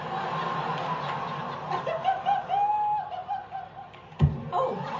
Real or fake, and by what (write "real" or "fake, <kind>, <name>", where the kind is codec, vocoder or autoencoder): real